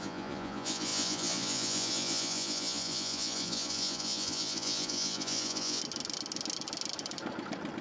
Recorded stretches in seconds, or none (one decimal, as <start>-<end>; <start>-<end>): 5.8-7.8